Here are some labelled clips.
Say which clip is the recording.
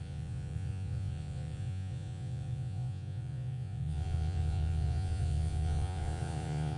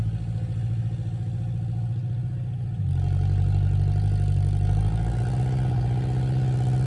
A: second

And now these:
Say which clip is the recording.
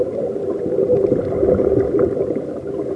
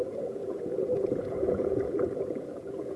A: first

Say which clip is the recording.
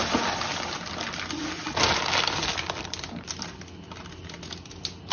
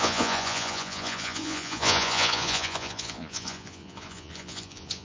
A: first